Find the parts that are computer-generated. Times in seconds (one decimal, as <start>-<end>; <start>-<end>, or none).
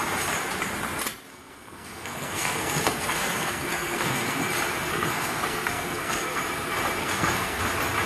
1.3-4.5; 4.9-6.4; 7.0-7.6